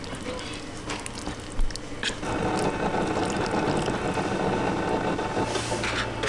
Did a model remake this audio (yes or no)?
no